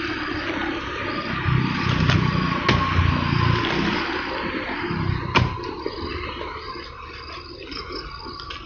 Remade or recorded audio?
recorded